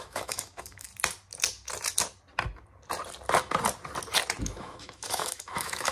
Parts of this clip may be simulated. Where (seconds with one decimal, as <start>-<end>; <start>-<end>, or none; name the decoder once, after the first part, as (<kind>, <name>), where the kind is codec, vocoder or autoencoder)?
0.0-0.9 (autoencoder, DAC-VAE); 4.4-5.9